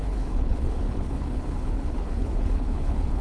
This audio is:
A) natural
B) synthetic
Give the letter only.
B